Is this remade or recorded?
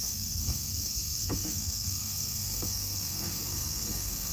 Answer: remade